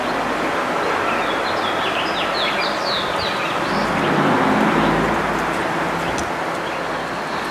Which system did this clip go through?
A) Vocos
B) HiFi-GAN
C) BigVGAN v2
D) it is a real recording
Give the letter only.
D